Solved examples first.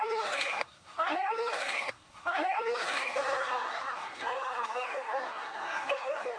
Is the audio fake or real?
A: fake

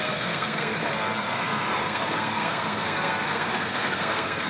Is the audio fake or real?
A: fake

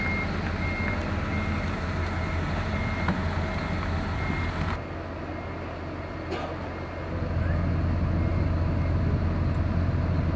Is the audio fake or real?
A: real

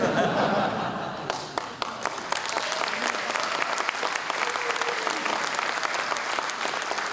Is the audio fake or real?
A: real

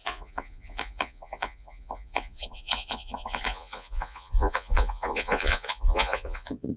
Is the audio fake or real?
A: fake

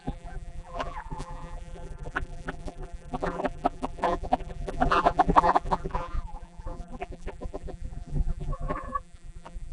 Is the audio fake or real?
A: fake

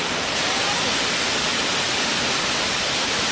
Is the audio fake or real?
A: real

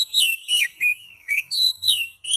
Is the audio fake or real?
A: fake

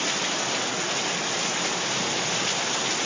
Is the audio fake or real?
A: real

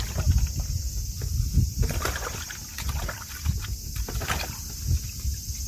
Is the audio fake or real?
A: real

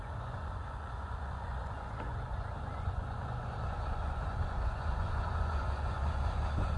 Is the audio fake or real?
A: fake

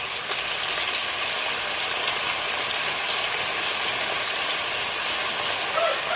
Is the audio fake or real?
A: real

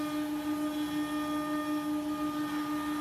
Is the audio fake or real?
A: real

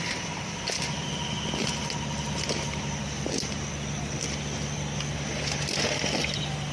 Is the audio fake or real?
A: real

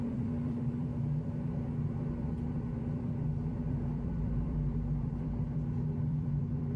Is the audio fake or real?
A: fake